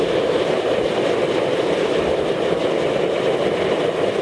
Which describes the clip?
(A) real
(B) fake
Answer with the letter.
B